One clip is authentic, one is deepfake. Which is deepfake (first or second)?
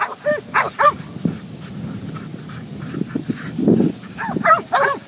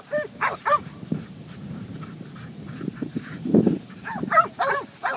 second